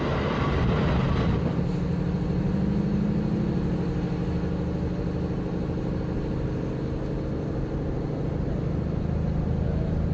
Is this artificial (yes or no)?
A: no